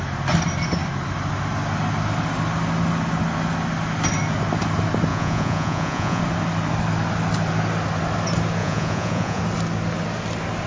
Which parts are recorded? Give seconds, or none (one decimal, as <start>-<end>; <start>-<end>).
0.0-5.1; 6.2-8.6; 9.4-10.7